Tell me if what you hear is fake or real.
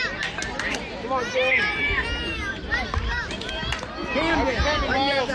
real